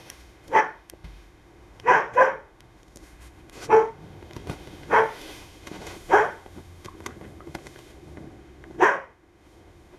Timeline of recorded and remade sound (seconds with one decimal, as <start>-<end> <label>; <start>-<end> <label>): 0.0-10.0 remade